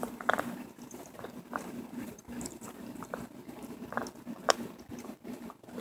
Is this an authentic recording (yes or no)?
no